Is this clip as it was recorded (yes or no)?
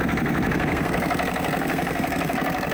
no